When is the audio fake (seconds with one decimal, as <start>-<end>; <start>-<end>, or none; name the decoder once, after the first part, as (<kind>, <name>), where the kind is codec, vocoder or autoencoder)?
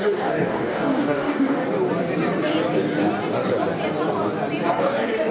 0.0-1.6 (codec, DAC); 4.8-5.3